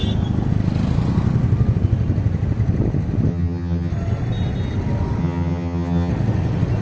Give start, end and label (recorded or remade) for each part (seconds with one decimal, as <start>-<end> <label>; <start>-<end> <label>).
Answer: 0.0-3.3 recorded; 3.3-3.9 remade; 3.9-5.2 recorded; 5.2-6.1 remade; 6.1-6.8 recorded